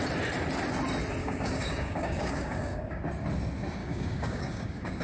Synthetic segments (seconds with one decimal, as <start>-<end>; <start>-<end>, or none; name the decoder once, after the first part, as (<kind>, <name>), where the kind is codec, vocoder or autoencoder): 1.2-3.0 (codec, DAC); 3.8-5.0